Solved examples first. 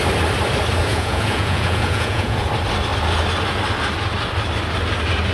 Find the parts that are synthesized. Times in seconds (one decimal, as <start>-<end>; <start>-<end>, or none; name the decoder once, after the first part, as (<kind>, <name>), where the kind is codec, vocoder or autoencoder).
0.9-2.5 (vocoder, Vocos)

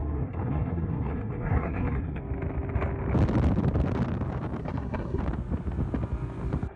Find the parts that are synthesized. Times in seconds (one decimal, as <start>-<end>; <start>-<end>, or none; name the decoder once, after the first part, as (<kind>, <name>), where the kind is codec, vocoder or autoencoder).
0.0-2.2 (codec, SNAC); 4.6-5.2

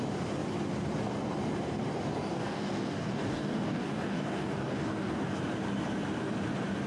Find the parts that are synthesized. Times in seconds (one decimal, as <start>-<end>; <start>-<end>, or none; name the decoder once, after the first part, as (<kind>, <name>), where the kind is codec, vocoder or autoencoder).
2.3-5.4 (codec, DAC)

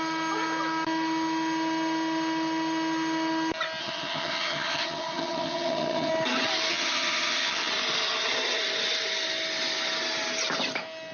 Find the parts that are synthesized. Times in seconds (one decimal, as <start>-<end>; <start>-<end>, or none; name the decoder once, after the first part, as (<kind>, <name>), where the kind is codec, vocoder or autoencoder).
3.8-6.1 (vocoder, HiFi-GAN); 6.7-7.7

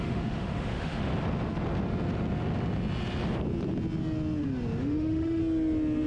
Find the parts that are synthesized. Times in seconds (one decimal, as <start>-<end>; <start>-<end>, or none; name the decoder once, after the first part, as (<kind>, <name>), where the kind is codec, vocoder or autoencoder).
0.0-1.1 (autoencoder, DAC-VAE); 4.8-5.4

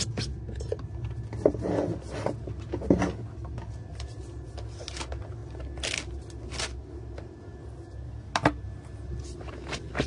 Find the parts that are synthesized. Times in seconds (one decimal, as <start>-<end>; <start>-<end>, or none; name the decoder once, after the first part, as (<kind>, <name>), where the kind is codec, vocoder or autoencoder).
none

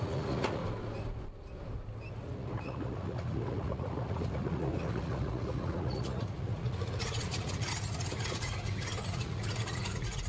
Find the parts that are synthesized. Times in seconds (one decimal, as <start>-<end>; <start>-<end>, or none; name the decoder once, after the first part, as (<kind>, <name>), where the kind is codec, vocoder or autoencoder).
0.0-0.6 (vocoder, Vocos); 2.1-10.3